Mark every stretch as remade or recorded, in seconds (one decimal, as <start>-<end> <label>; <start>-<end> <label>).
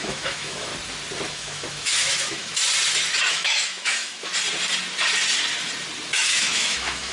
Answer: 0.0-0.7 remade; 0.7-1.3 recorded; 1.3-2.6 remade; 2.6-3.3 recorded; 3.3-4.3 remade; 4.3-6.1 recorded; 6.1-7.1 remade